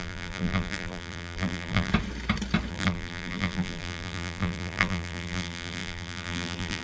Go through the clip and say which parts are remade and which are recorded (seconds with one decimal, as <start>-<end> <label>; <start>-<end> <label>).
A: 0.0-1.9 remade; 1.9-2.7 recorded; 2.7-6.8 remade